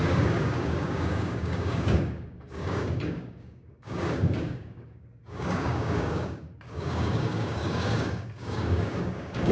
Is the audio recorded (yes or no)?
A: no